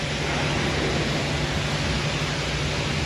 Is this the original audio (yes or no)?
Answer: yes